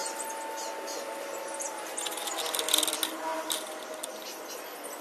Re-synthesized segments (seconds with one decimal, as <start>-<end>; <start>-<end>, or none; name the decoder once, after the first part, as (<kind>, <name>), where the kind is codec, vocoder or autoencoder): 3.3-4.5 (vocoder, BigVGAN v2)